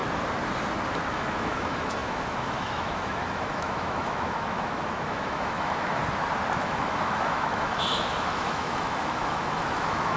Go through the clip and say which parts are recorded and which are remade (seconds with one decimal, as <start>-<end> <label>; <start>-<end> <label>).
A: 0.0-1.1 recorded; 1.1-6.0 remade; 6.0-6.6 recorded; 6.6-10.2 remade